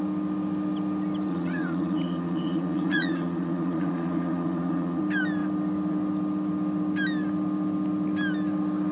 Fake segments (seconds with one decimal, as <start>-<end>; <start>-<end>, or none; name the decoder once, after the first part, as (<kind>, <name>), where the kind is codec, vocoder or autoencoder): 1.3-5.0 (vocoder, Vocos)